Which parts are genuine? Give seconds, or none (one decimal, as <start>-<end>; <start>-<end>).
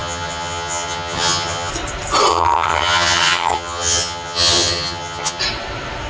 1.7-2.3; 5.4-6.1